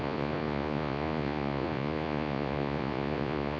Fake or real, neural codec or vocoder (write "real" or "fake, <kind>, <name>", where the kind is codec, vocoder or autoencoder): fake, vocoder, Vocos